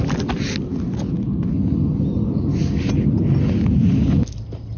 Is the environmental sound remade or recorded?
recorded